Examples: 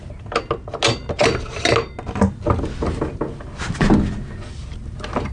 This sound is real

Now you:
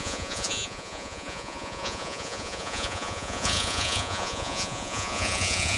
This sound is fake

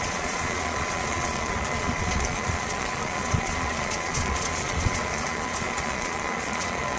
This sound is fake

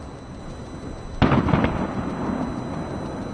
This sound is real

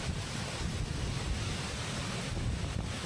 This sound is real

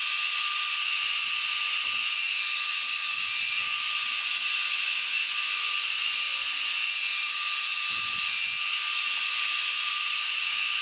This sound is fake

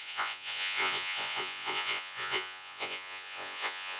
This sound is fake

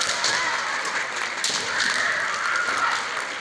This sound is real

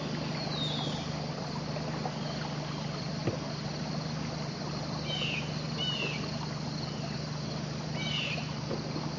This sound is real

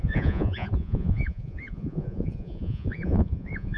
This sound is fake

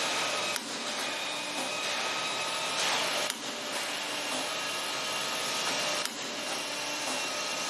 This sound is real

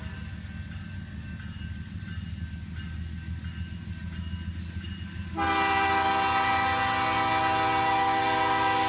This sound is real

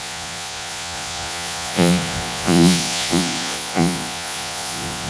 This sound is fake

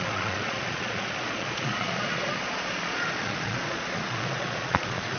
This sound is fake